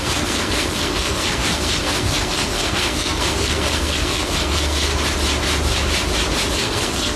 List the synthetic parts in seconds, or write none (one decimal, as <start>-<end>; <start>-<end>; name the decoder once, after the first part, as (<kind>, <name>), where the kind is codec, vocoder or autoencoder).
0.0-4.9 (codec, SNAC); 6.5-7.2